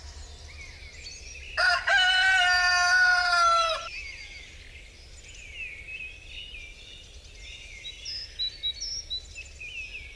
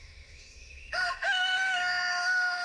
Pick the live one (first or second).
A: first